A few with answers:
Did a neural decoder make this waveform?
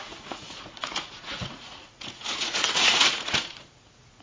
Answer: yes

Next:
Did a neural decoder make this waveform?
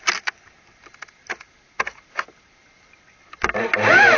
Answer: no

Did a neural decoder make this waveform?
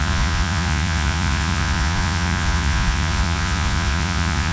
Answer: yes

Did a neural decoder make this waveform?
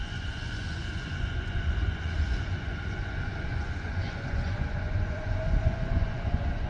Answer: yes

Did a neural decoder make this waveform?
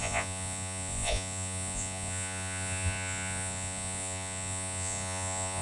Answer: yes